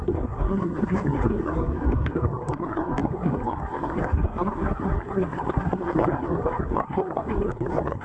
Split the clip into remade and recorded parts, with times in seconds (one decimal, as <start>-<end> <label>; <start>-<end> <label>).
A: 0.0-8.0 remade